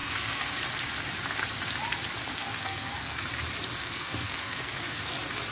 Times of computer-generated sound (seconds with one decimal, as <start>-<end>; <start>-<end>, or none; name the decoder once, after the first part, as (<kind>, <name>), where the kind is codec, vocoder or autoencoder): 0.0-0.6 (codec, SNAC); 2.3-3.2; 3.8-5.1